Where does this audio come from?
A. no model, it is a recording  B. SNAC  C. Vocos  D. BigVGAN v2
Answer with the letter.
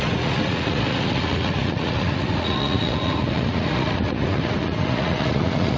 C